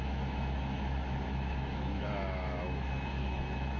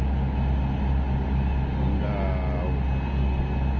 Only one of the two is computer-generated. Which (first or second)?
first